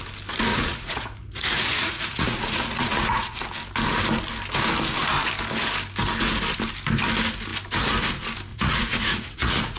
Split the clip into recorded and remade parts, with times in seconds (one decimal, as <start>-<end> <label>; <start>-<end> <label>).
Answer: 0.0-0.5 recorded; 0.5-3.4 remade; 3.4-8.5 recorded; 8.5-9.8 remade